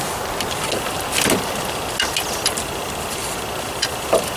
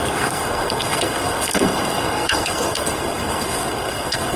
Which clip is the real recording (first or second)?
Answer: first